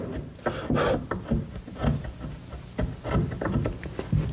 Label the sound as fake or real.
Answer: real